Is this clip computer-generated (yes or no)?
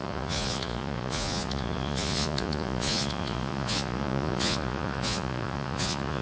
yes